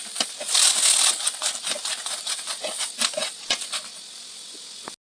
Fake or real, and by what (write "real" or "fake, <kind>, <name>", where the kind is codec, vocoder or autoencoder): real